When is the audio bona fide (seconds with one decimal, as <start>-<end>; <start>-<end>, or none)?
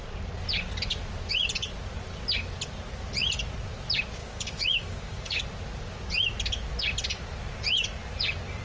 0.0-4.2; 5.4-8.6